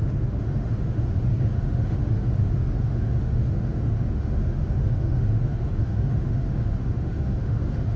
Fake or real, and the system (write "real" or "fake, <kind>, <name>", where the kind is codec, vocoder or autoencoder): fake, autoencoder, DAC-VAE